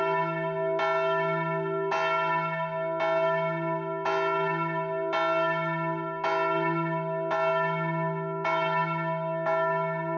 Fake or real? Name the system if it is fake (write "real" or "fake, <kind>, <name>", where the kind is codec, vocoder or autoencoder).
real